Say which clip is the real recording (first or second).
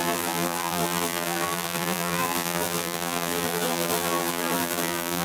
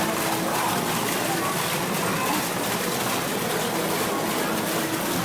second